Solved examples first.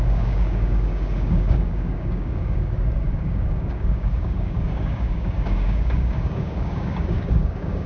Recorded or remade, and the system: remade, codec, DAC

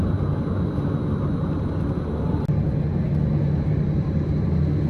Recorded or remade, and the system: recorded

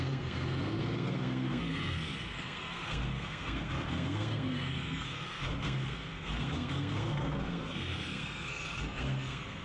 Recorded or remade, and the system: remade, codec, SNAC